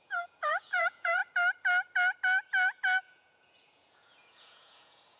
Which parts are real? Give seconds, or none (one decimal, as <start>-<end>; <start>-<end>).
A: 1.2-3.0